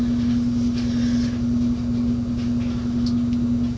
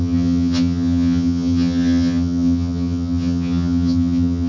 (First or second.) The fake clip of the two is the second